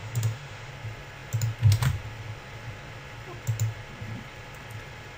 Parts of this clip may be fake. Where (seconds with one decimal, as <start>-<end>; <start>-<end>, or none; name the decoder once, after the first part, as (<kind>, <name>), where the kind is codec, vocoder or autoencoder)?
0.0-0.7 (autoencoder, DAC-VAE)